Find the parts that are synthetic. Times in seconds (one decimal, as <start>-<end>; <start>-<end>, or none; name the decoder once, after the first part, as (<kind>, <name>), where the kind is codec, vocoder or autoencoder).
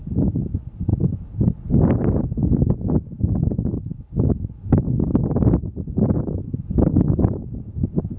none